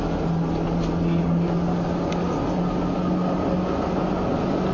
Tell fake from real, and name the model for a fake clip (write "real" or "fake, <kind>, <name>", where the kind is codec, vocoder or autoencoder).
real